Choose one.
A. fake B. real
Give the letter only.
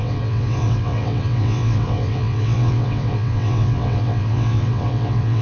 A